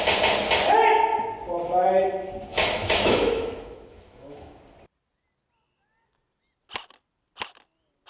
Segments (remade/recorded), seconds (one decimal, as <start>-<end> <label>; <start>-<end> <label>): 0.0-2.5 recorded; 2.5-4.6 remade; 4.6-8.1 recorded